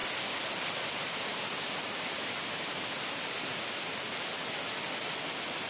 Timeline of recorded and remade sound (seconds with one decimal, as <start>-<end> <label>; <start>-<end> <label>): 0.0-5.7 recorded